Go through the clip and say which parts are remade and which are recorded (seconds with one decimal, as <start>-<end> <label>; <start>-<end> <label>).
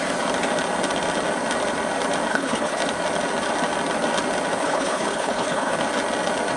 0.0-2.3 recorded; 2.3-2.8 remade; 2.8-4.6 recorded; 4.6-5.8 remade; 5.8-6.6 recorded